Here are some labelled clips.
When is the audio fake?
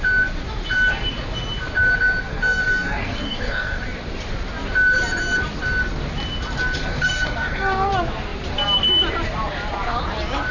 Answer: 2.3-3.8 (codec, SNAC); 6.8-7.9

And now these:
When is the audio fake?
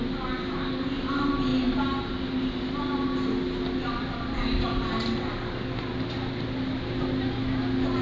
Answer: none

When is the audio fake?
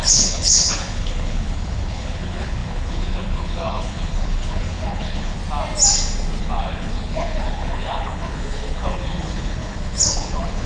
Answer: 0.0-5.4 (codec, HILCodec); 6.4-10.7